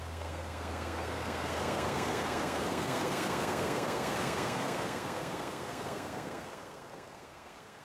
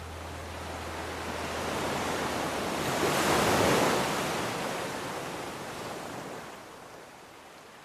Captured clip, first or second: second